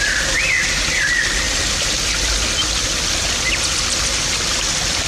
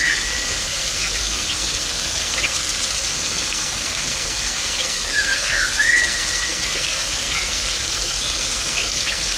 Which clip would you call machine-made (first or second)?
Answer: second